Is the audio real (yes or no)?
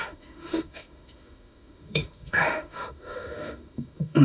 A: no